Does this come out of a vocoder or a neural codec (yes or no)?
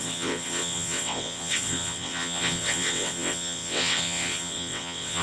yes